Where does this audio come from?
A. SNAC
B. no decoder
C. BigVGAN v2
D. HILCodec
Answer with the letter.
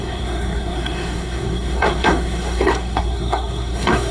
A